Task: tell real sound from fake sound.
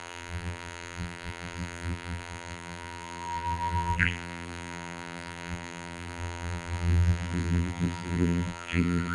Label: fake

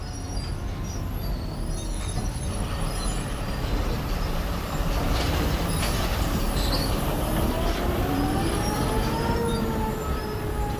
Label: fake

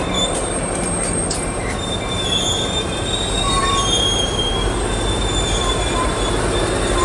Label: fake